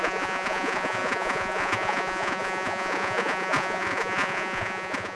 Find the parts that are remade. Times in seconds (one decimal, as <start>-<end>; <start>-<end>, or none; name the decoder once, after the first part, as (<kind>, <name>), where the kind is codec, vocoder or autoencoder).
0.0-5.2 (vocoder, Vocos)